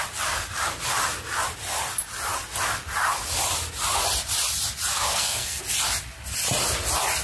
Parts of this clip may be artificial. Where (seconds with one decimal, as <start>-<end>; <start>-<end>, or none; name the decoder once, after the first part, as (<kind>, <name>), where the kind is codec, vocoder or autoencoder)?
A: 4.9-5.6 (codec, SNAC)